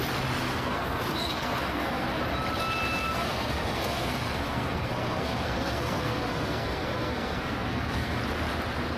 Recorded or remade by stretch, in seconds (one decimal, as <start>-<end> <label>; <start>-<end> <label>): 0.0-0.5 recorded; 0.5-2.2 remade; 2.2-3.0 recorded; 3.0-8.2 remade; 8.2-9.0 recorded